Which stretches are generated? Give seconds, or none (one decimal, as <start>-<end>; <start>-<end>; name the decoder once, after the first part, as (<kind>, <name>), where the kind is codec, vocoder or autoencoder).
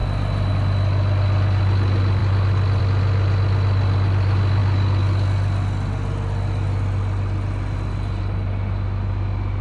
none